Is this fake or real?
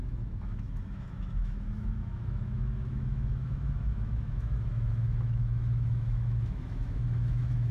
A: fake